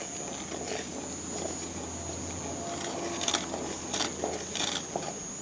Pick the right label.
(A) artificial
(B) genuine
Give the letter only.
B